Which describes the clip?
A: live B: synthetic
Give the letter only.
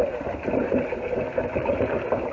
B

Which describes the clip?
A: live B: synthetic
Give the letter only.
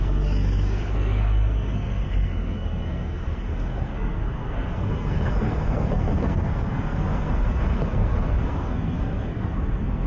B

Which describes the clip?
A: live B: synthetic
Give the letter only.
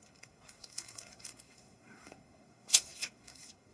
B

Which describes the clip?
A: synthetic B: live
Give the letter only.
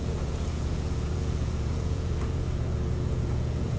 A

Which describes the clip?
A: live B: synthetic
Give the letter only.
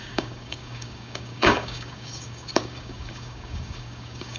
B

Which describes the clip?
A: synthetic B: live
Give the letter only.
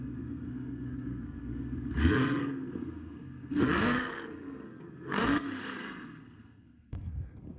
A